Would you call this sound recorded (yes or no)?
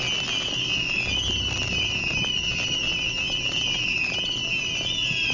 yes